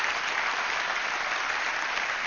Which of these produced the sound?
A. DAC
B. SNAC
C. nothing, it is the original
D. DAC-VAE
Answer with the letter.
C